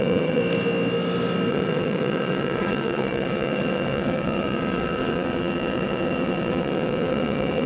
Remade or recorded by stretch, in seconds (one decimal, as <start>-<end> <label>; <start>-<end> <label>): 0.0-0.4 remade; 0.4-1.5 recorded; 1.5-7.7 remade